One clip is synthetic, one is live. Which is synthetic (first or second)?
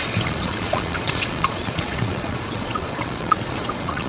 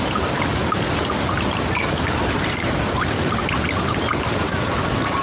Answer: first